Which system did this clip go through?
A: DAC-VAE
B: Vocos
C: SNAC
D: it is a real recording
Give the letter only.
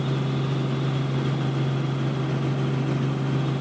D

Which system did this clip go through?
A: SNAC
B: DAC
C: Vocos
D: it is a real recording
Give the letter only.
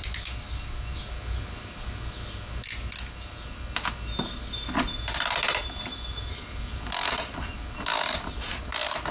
D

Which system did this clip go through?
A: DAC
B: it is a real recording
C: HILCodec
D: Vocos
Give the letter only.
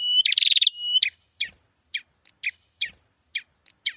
B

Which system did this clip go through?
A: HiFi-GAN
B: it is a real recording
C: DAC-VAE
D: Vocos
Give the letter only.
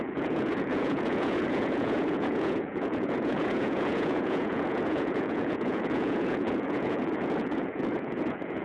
D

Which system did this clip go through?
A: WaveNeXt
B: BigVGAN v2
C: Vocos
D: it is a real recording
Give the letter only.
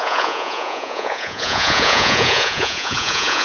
C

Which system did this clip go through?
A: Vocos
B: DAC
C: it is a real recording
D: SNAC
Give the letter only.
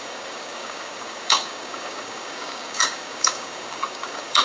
B